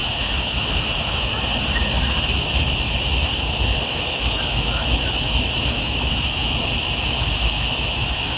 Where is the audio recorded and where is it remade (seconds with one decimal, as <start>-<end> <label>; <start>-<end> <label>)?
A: 0.0-1.3 remade; 1.3-2.2 recorded; 2.2-8.4 remade